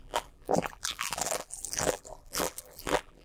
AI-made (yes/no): yes